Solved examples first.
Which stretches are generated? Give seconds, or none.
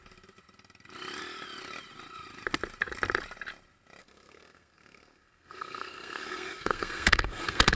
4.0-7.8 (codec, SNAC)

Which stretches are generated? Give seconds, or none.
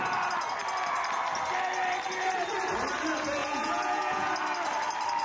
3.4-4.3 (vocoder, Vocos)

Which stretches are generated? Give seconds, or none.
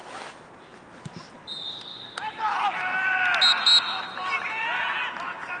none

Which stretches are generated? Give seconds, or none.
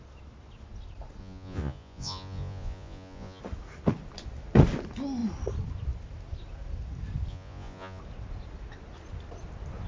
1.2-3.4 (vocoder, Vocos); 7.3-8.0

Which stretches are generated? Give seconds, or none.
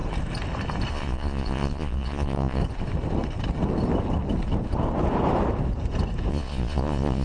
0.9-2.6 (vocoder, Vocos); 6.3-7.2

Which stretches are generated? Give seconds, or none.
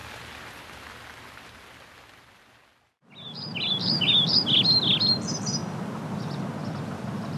none